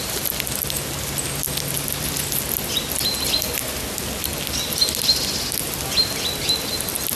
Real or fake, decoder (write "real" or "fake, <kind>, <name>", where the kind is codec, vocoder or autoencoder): real